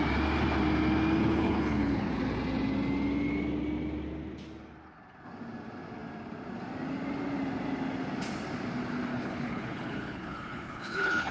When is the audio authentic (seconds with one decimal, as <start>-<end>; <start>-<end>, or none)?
0.0-1.2; 2.2-9.1